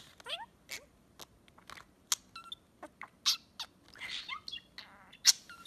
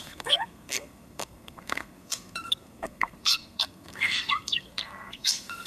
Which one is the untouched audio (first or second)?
first